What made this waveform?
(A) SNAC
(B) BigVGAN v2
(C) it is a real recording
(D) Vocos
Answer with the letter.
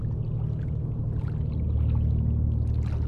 C